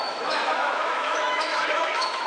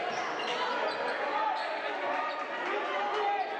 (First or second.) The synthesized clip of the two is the first